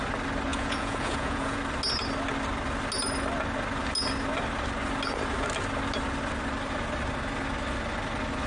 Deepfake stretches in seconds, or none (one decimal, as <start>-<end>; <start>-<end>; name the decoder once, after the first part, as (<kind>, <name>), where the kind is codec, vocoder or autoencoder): 0.5-1.6 (vocoder, Vocos)